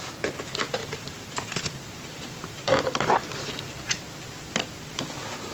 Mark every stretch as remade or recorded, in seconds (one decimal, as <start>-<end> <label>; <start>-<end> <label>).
0.0-0.8 recorded; 0.8-4.1 remade; 4.1-5.5 recorded